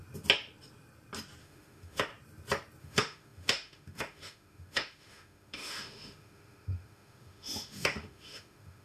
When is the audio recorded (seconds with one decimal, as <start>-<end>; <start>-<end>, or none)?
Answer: 0.0-1.4; 2.1-2.8